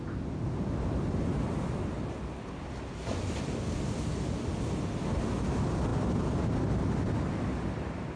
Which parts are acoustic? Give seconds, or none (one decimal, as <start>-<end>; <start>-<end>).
0.0-8.2